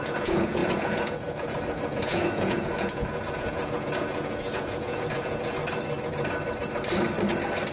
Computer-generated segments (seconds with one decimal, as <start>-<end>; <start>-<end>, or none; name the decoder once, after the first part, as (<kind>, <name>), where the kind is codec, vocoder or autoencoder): 0.0-5.6 (vocoder, Vocos)